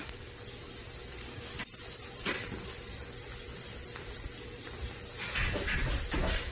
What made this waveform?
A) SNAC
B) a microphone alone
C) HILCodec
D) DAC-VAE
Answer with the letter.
B